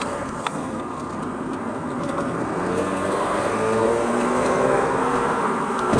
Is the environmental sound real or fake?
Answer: fake